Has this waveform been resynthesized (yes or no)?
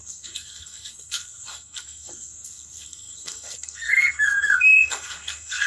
yes